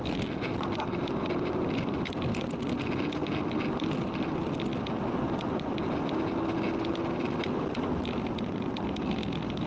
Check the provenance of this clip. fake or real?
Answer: real